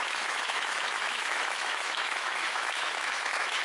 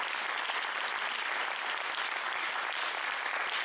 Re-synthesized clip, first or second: first